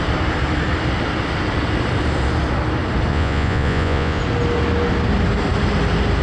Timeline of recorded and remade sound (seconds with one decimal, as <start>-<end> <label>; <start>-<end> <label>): 0.0-3.1 recorded; 3.1-4.2 remade; 4.2-6.2 recorded